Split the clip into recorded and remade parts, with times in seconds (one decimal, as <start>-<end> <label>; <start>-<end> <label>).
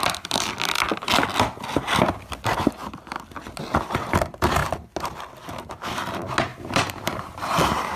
0.0-6.5 recorded; 6.5-7.4 remade; 7.4-8.0 recorded